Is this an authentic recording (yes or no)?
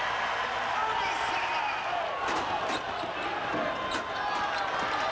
yes